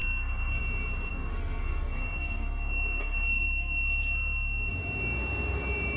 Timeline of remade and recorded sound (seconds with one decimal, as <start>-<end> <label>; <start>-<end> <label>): 0.0-0.6 remade; 0.6-1.1 recorded; 1.1-4.7 remade; 4.7-6.0 recorded